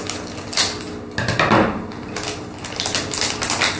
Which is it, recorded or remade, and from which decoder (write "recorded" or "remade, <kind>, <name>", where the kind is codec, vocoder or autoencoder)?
recorded